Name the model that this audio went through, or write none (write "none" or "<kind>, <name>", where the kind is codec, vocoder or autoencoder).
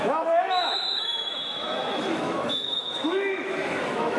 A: autoencoder, DAC-VAE